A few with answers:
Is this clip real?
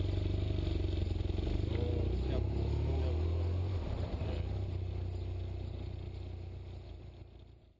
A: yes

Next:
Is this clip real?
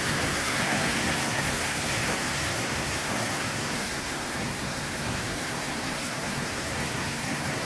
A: no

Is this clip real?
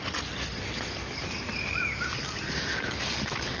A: yes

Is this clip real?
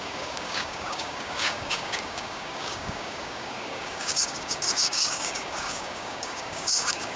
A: no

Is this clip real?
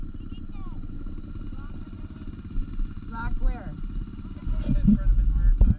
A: yes